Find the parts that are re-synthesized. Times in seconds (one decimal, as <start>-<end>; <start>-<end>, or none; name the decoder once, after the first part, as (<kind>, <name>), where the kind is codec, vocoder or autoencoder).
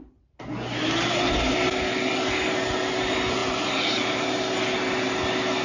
none